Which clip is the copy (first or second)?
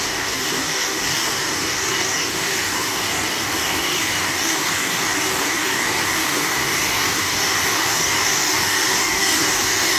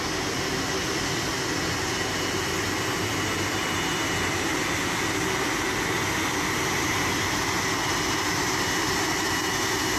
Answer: first